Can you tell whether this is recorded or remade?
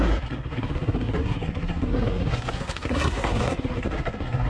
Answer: remade